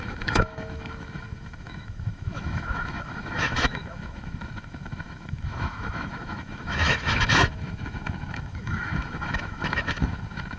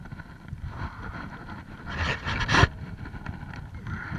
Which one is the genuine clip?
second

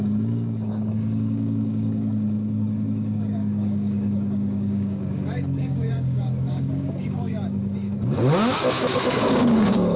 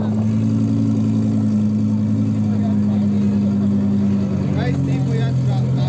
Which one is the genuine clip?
second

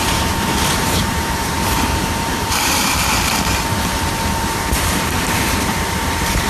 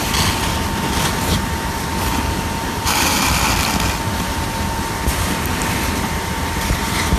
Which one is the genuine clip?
second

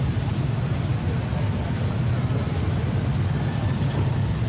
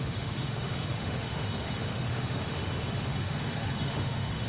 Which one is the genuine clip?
first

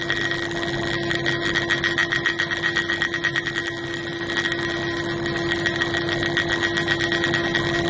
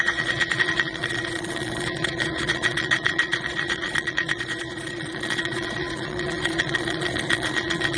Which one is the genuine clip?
first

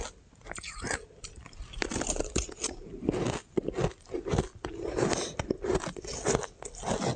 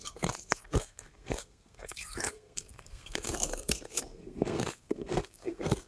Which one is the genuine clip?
first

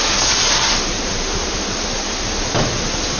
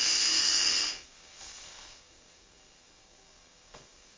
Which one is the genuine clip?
first